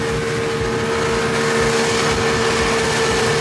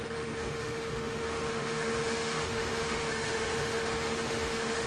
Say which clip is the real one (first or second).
first